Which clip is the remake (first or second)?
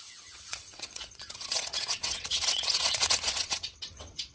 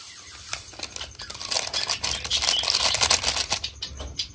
first